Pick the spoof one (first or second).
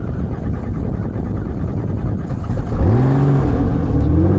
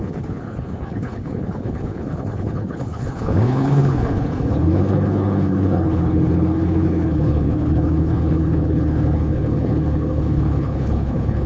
second